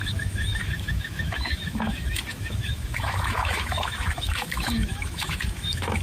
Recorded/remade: remade